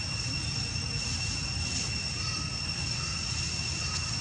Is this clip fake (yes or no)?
no